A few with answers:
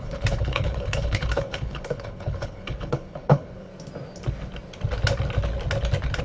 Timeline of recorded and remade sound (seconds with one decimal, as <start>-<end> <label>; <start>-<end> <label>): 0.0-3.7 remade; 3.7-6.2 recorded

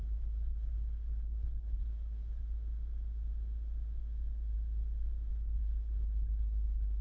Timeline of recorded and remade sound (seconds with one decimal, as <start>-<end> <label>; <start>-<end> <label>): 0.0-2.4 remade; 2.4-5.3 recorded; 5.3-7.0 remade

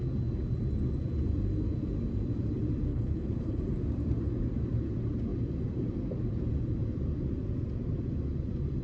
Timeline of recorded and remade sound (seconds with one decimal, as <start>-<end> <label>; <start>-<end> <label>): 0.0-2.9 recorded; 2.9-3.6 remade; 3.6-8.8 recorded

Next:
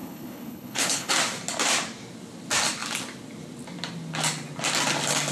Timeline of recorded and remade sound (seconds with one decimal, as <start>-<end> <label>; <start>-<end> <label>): 0.0-1.1 remade; 1.1-5.3 recorded

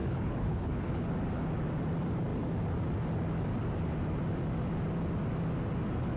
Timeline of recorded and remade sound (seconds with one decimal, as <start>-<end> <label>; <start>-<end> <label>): 0.0-1.1 remade; 1.1-6.2 recorded

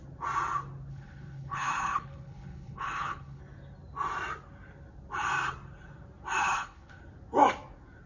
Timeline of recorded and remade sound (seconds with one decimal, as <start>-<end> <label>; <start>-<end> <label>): 0.0-0.9 recorded; 0.9-3.4 remade; 3.4-6.4 recorded; 6.4-7.0 remade; 7.0-8.1 recorded

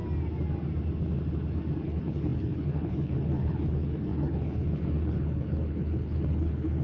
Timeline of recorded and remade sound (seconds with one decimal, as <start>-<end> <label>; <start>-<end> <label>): 0.0-1.8 recorded; 1.8-6.8 remade

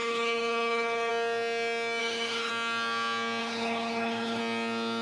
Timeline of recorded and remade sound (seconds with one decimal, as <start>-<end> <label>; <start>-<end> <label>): 0.0-1.1 remade; 1.1-2.0 recorded; 2.0-2.5 remade; 2.5-3.4 recorded; 3.4-4.4 remade; 4.4-5.0 recorded